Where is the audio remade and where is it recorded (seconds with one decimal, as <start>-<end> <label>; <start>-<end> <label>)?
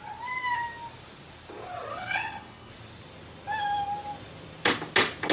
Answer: 0.0-1.9 recorded; 1.9-2.7 remade; 2.7-5.3 recorded